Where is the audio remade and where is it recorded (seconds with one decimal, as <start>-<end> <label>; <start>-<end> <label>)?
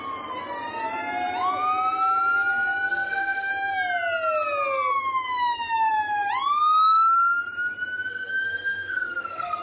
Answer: 0.0-2.9 recorded; 2.9-3.5 remade; 3.5-8.1 recorded; 8.1-9.6 remade